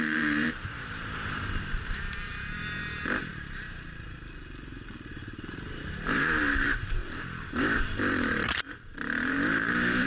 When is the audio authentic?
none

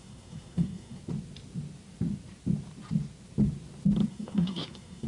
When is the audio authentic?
1.0-4.1

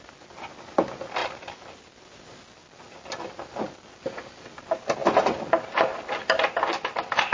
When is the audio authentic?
0.0-7.3

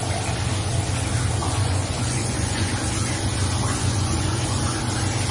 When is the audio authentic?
0.0-1.4; 2.7-3.7; 4.8-5.3